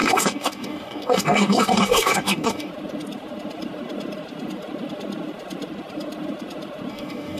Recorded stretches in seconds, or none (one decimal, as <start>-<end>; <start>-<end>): 2.7-6.9